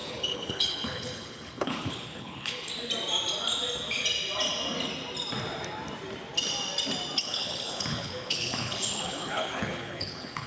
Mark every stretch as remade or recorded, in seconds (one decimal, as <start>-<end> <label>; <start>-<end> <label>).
0.0-2.7 remade; 2.7-7.2 recorded; 7.2-10.5 remade